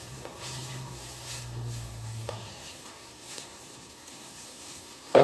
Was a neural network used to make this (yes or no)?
yes